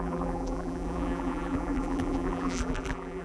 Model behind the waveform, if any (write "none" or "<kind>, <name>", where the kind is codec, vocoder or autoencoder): vocoder, BigVGAN v2